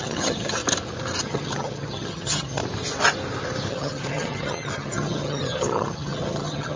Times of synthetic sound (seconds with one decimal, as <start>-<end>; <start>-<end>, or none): 0.0-0.6; 1.2-2.6; 3.7-6.8